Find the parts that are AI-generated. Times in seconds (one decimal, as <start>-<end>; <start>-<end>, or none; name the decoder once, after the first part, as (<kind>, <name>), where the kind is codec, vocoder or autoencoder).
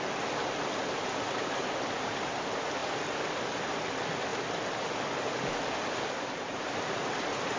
none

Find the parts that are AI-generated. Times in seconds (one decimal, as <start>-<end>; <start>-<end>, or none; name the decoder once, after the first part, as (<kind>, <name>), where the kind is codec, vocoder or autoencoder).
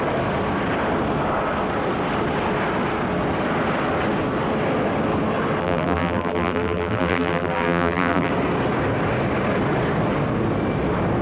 5.6-8.3 (vocoder, BigVGAN v2)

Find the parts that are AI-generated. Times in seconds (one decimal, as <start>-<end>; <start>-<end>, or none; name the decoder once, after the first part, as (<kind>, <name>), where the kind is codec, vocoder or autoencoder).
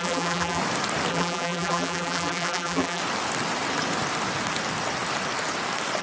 0.0-0.6 (vocoder, BigVGAN v2); 1.1-3.0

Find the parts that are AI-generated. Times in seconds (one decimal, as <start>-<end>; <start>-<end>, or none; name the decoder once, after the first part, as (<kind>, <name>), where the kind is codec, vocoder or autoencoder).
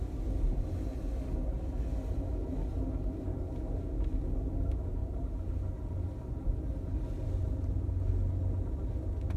5.0-5.9 (vocoder, BigVGAN v2)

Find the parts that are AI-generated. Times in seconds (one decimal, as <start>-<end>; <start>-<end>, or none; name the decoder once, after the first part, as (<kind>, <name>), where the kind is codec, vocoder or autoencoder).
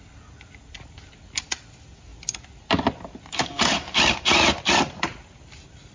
none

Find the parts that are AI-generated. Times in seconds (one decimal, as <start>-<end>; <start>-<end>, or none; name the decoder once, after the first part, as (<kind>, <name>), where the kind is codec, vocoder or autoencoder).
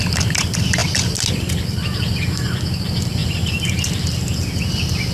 none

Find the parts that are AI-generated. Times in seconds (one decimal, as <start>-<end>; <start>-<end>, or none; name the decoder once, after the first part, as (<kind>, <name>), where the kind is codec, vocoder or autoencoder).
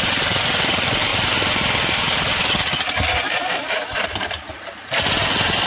none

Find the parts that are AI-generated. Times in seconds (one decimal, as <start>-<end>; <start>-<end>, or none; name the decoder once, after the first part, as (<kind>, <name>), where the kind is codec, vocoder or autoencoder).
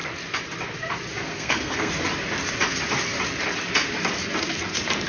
1.3-1.9 (codec, SNAC)